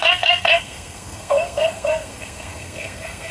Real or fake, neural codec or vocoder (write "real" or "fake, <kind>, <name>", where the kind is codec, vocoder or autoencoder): fake, codec, SNAC